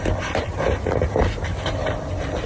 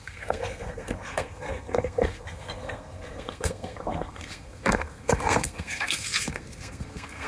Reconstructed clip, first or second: second